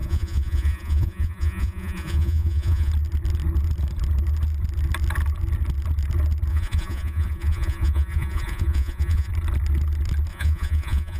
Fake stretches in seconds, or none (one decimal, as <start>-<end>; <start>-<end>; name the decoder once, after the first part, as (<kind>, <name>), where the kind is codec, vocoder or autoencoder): 0.0-2.9 (vocoder, Vocos); 6.5-9.3; 10.3-11.2